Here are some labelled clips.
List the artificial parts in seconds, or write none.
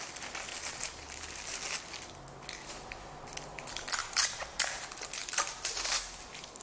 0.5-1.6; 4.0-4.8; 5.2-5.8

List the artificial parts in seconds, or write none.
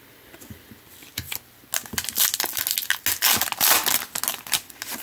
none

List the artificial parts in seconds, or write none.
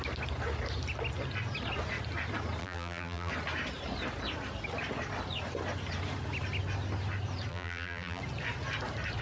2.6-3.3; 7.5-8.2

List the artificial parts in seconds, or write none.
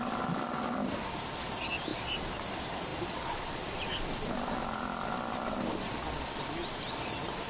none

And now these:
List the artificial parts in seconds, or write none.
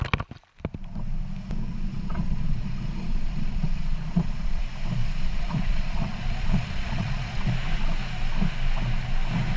1.9-4.6; 5.0-7.5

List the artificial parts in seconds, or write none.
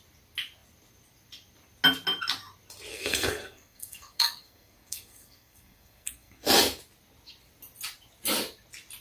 2.9-6.5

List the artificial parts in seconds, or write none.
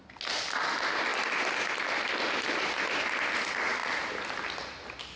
none